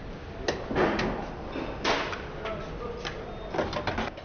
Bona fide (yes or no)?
yes